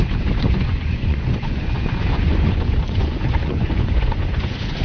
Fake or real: fake